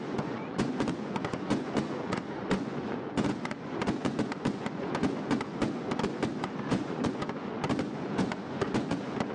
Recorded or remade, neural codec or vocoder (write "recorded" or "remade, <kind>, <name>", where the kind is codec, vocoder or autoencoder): remade, vocoder, Vocos